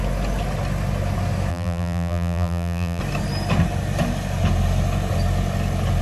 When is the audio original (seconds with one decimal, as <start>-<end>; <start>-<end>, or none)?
0.0-1.5; 3.0-6.0

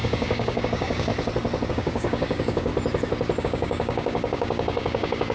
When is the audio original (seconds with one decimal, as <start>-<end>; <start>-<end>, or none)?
1.1-1.7; 2.7-3.4

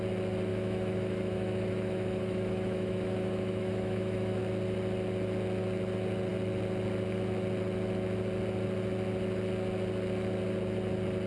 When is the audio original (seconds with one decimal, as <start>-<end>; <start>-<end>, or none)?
0.0-0.5; 4.4-11.3

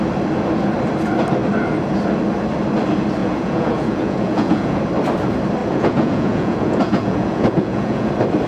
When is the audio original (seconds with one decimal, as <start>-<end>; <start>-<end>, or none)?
0.0-3.2; 4.8-5.6; 8.1-8.5